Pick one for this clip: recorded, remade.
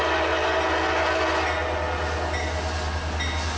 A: recorded